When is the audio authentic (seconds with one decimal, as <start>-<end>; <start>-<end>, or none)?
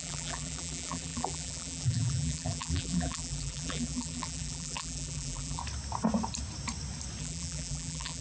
5.6-7.2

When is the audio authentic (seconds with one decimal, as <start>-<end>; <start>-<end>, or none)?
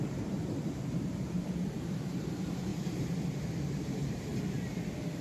4.3-5.2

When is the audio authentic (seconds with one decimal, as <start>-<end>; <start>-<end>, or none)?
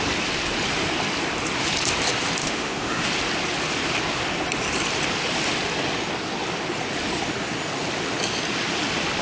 0.0-2.4; 3.1-9.2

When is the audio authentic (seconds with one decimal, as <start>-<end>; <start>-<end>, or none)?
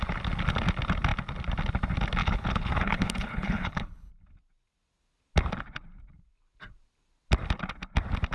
0.0-2.2; 4.1-8.3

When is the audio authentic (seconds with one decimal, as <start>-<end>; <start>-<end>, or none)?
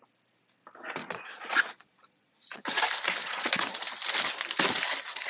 0.0-1.0; 2.8-3.2; 3.8-5.3